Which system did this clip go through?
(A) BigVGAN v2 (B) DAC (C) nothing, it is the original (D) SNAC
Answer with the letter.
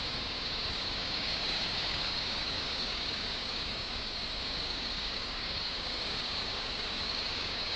B